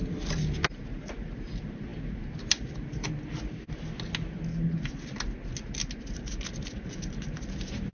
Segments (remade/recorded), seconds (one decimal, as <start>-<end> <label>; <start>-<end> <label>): 0.0-7.9 recorded